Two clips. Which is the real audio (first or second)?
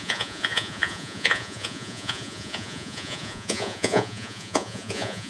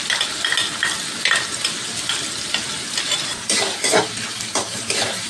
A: second